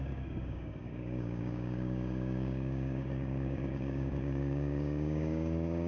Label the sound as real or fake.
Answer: fake